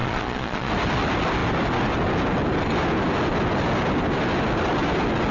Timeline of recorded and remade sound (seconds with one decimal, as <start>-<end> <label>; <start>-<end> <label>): 0.0-0.7 remade; 0.7-5.3 recorded